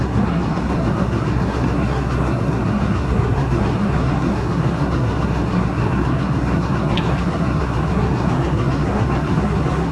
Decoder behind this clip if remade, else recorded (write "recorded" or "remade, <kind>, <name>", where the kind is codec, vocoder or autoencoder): remade, codec, SNAC